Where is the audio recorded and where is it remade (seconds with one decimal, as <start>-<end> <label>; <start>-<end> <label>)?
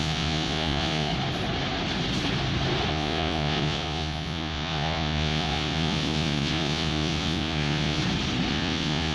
0.0-1.1 remade; 1.1-2.9 recorded; 2.9-8.0 remade; 8.0-8.5 recorded; 8.5-9.1 remade